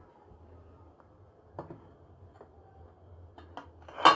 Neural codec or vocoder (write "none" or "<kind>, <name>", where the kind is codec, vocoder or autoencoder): none